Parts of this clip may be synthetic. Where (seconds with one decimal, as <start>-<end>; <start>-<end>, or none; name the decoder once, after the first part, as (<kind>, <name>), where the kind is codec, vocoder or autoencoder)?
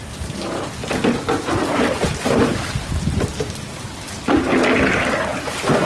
none